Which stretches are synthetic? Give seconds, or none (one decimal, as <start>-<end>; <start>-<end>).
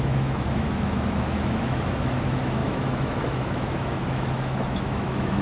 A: 0.0-5.4